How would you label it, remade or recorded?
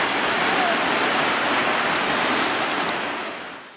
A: recorded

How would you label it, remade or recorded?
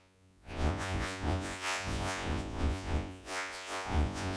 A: remade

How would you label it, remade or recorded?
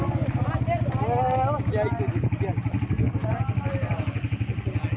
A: recorded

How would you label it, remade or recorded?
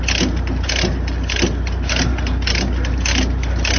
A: recorded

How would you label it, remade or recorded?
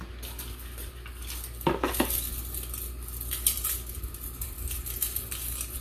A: recorded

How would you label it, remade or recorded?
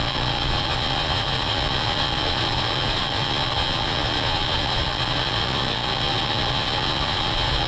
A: remade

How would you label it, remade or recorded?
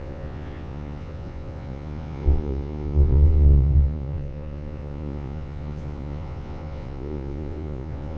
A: remade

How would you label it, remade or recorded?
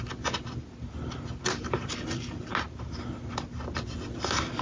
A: recorded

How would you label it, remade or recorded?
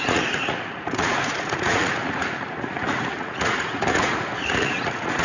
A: remade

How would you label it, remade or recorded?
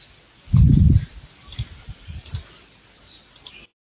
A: recorded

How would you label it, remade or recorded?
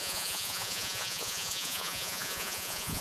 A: remade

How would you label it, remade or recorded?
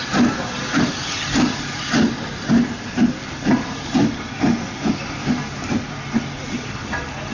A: recorded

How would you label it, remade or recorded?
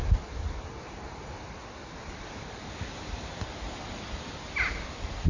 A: recorded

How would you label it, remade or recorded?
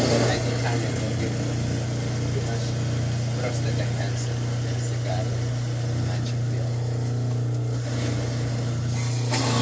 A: recorded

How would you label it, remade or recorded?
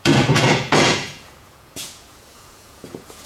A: remade